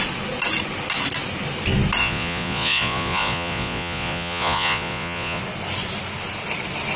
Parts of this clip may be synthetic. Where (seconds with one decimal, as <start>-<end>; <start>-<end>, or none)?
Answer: 2.0-5.4